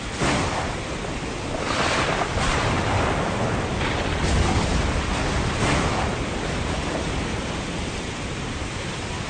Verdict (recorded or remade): recorded